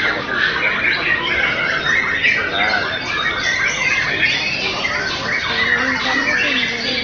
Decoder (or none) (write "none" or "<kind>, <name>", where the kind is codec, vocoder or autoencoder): none